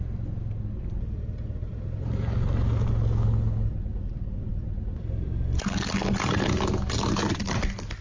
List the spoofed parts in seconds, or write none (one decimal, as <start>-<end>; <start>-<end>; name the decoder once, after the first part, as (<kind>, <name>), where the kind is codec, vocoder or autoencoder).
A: 1.6-2.9 (vocoder, BigVGAN v2)